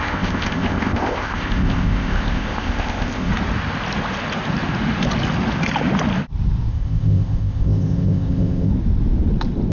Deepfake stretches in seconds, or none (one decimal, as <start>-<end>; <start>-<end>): 0.0-3.3; 6.7-8.7